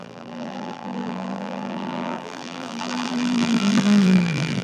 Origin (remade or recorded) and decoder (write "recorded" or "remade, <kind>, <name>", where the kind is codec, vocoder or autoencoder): remade, vocoder, BigVGAN v2